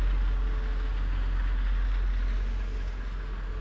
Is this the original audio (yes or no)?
yes